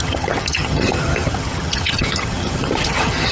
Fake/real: fake